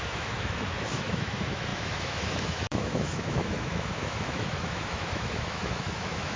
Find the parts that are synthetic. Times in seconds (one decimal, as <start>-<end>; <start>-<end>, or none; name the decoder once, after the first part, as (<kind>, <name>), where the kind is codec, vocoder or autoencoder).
0.0-6.4 (autoencoder, DAC-VAE)